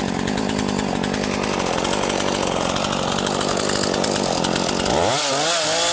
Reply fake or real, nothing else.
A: real